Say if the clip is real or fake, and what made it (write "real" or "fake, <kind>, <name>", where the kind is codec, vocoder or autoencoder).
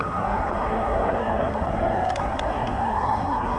fake, codec, SNAC